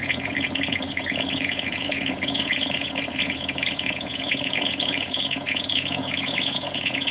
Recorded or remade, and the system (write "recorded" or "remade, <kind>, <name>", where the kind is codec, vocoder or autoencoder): remade, vocoder, Vocos